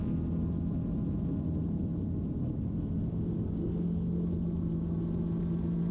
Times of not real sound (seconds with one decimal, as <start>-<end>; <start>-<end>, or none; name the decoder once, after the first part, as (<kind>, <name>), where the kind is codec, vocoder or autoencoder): none